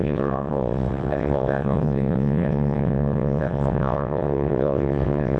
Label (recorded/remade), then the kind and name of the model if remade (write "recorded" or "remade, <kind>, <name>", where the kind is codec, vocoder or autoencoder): remade, vocoder, WaveNeXt